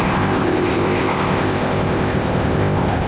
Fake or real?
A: fake